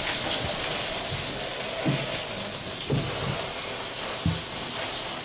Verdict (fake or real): real